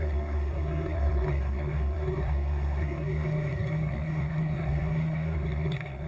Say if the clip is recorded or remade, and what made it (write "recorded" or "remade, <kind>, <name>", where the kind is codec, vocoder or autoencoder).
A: remade, codec, SNAC